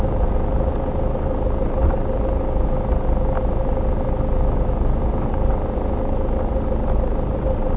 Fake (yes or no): no